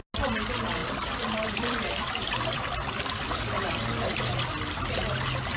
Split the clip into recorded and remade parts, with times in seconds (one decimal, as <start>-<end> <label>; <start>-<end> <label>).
0.0-0.8 recorded; 0.8-4.2 remade; 4.2-5.6 recorded